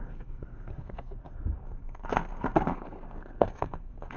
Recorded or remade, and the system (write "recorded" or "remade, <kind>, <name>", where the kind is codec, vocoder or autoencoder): remade, codec, SNAC